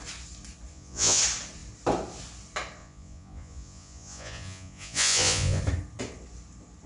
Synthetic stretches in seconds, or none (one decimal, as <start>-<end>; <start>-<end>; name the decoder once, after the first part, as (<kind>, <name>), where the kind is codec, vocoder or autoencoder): 0.7-1.2 (vocoder, Vocos); 2.8-5.6